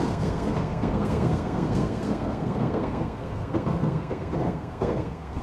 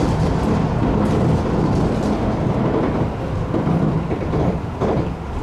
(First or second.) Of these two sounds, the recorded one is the second